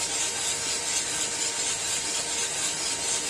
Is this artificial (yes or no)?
no